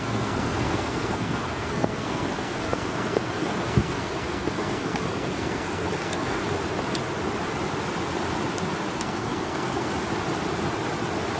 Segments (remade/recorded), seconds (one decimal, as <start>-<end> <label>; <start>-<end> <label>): 0.0-6.4 remade; 6.4-9.0 recorded; 9.0-9.9 remade; 9.9-11.4 recorded